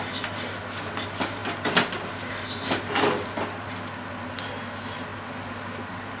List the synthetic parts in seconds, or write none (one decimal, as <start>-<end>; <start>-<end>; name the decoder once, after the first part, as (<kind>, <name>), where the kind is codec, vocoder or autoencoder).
none

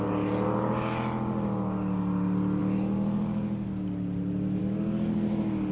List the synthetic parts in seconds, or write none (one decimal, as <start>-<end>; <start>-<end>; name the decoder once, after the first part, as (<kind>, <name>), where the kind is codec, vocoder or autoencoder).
none

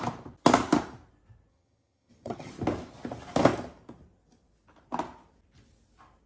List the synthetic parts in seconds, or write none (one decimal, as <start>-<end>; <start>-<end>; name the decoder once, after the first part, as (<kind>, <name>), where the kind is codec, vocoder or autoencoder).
1.5-2.5 (vocoder, HiFi-GAN)

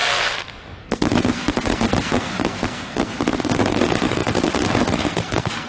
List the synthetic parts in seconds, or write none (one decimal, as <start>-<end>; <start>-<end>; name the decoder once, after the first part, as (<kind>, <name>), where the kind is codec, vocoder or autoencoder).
0.0-5.7 (codec, SNAC)

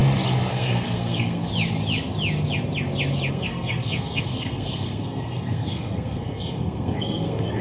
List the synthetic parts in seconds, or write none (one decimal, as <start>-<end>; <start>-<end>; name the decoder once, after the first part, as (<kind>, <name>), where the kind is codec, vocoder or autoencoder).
0.5-1.5 (codec, SNAC); 3.3-7.6

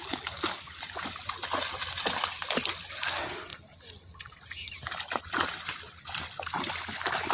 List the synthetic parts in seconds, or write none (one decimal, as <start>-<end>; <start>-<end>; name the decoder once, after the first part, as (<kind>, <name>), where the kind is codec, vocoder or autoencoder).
none